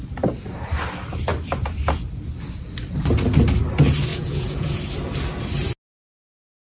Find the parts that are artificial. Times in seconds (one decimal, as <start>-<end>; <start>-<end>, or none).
4.1-4.8